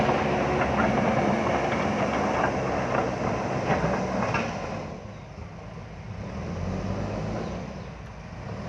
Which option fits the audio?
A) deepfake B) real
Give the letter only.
B